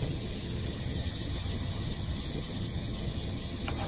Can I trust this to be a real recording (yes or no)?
no